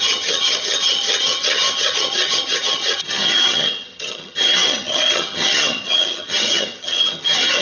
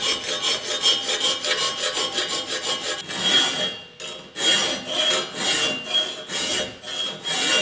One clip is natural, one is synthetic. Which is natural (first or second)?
second